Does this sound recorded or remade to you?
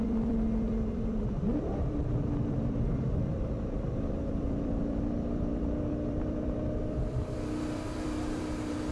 remade